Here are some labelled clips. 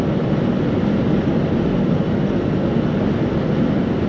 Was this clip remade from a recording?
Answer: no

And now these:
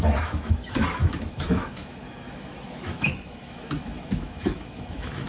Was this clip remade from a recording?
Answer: yes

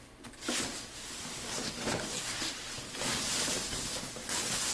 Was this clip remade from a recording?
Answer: no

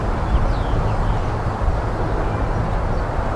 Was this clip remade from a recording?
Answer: no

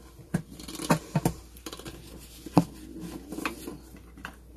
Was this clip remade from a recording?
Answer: no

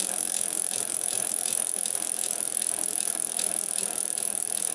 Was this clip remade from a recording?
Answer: yes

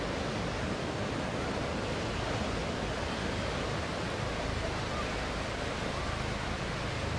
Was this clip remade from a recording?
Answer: no